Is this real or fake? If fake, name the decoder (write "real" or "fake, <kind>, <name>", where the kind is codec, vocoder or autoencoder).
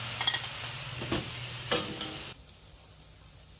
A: real